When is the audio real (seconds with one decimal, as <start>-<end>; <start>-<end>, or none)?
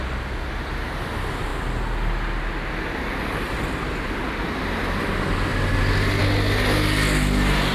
0.0-7.7